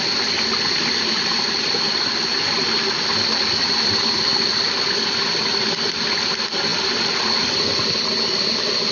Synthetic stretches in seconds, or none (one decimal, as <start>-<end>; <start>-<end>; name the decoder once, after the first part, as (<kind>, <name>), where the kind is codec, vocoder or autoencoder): 6.7-7.6 (vocoder, BigVGAN v2)